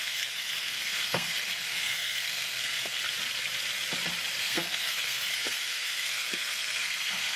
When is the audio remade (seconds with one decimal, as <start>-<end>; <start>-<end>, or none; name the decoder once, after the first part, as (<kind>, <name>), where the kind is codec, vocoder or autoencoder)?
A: 0.0-3.0 (codec, SNAC); 4.4-7.4